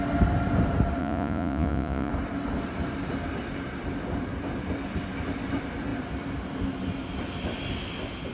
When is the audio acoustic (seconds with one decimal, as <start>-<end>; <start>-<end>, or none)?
0.0-1.0; 2.1-8.3